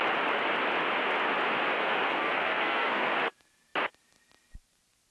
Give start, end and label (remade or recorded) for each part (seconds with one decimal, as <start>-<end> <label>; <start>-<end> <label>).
0.0-1.8 recorded; 1.8-3.1 remade; 3.1-5.1 recorded